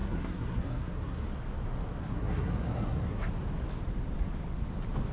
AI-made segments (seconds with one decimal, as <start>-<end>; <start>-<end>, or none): 0.0-1.2; 2.0-3.3